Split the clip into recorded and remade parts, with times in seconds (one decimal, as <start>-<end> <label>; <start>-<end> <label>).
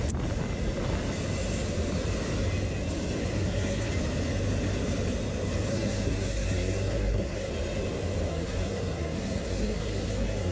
0.0-3.2 recorded; 3.2-3.9 remade; 3.9-5.7 recorded; 5.7-7.5 remade; 7.5-8.3 recorded; 8.3-10.5 remade